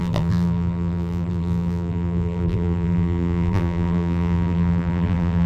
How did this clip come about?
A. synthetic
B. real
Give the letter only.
A